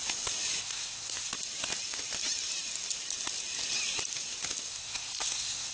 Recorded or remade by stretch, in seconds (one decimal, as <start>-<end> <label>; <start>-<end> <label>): 0.0-0.6 recorded; 0.6-1.3 remade; 1.3-4.7 recorded; 4.7-5.7 remade